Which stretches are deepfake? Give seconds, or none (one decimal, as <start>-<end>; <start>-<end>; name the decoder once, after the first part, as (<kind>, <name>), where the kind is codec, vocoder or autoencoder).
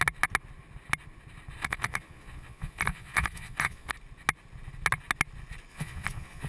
1.6-3.9 (vocoder, Vocos); 5.7-6.5